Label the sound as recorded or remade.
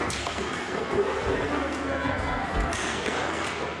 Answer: remade